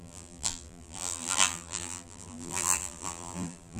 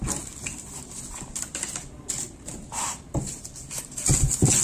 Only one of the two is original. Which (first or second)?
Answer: second